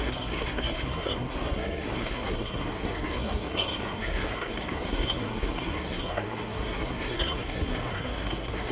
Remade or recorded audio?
remade